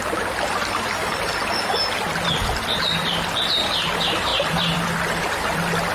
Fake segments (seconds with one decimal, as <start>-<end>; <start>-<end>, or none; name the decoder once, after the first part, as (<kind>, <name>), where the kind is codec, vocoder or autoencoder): none